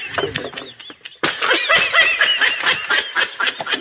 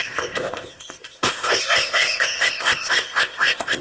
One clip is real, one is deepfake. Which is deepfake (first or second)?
second